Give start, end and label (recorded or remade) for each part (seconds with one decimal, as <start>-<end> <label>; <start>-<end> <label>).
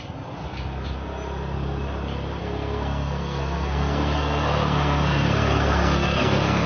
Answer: 0.0-2.4 recorded; 2.4-6.7 remade